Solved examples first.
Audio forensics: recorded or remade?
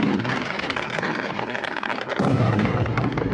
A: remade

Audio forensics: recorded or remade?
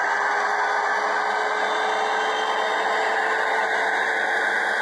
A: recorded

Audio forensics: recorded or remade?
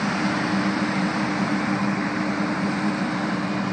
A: remade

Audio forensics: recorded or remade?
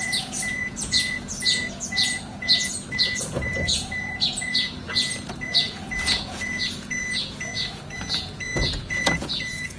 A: remade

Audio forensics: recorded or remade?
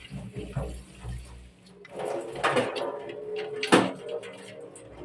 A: recorded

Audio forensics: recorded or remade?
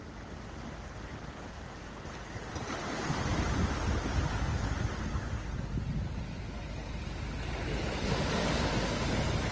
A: recorded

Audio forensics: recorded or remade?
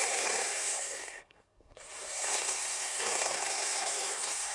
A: remade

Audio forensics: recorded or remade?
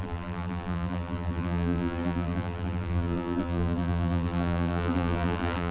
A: remade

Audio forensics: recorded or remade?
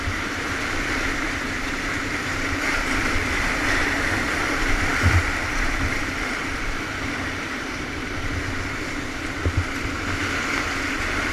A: remade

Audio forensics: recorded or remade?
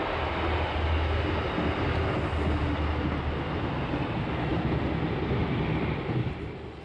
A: recorded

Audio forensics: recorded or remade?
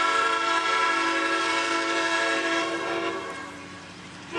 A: remade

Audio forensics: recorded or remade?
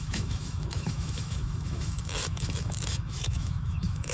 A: remade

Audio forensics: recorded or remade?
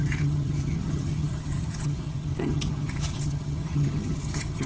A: remade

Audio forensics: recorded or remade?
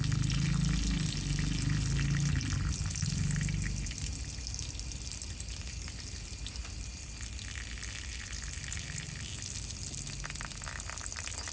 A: recorded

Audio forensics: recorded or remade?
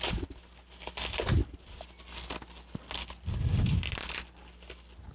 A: recorded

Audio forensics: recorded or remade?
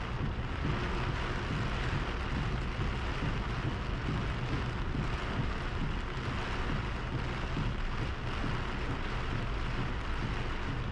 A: recorded